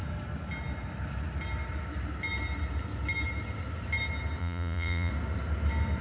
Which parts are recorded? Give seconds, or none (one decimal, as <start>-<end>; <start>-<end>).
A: 0.0-4.4; 5.1-6.0